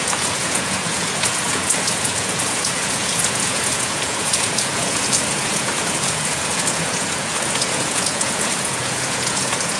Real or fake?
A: fake